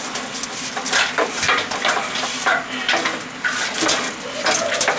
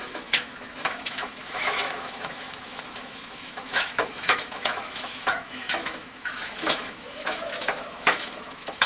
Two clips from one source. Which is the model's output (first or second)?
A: second